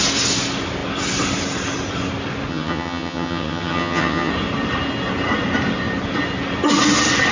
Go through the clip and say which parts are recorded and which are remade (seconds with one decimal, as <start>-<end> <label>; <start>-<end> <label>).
0.0-2.5 recorded; 2.5-4.3 remade; 4.3-7.3 recorded